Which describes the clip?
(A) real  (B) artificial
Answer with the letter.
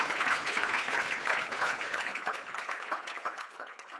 B